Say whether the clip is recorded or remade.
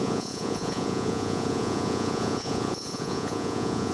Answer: remade